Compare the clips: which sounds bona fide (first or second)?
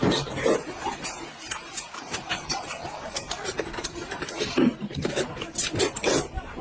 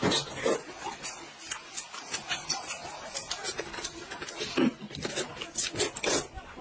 second